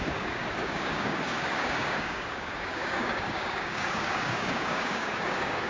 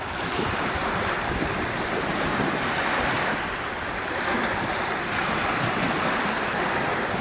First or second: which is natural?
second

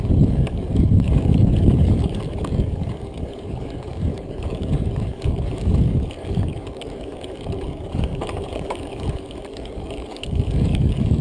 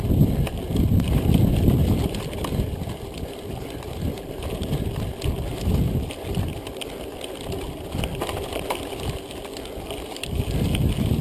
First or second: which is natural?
second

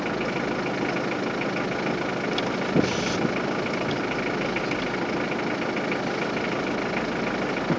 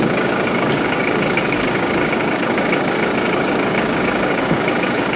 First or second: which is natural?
first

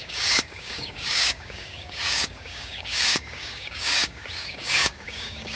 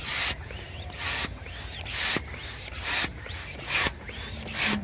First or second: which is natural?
second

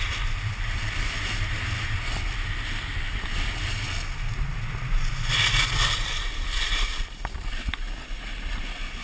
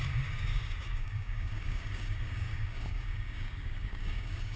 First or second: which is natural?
first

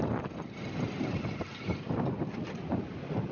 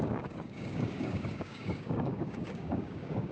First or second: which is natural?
first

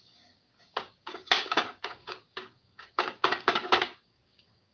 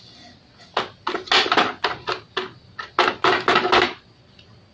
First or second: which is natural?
second